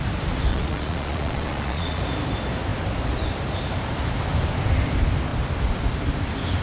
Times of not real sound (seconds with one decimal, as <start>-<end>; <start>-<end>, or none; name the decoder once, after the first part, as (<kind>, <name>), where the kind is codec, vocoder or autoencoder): 0.5-2.0 (vocoder, Vocos)